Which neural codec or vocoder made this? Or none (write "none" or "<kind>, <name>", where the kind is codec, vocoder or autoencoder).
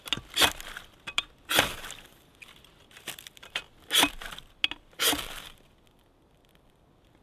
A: none